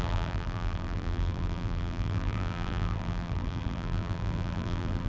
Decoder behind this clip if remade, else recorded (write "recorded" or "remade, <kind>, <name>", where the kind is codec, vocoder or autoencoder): remade, vocoder, BigVGAN v2